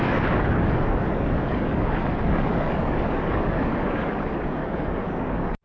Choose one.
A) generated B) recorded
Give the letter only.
A